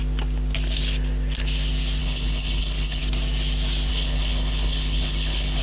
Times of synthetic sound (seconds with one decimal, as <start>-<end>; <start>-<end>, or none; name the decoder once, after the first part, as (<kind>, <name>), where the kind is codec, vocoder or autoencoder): 2.0-3.0 (codec, HILCodec); 3.9-5.6